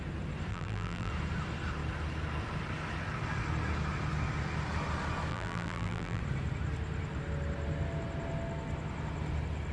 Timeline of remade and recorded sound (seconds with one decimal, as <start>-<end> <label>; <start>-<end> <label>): 0.0-0.5 recorded; 0.5-1.1 remade; 1.1-5.3 recorded; 5.3-6.2 remade; 6.2-9.7 recorded